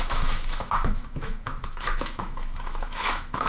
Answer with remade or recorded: remade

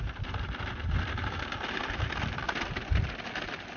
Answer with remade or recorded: recorded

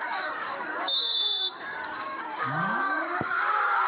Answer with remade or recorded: remade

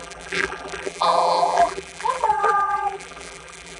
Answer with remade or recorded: remade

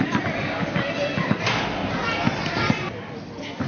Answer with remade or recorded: recorded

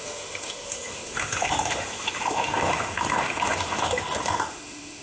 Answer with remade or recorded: remade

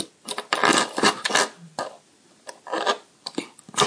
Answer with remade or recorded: recorded